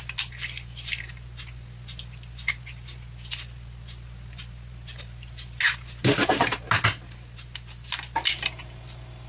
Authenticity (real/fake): real